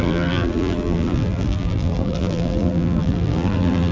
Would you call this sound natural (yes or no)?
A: no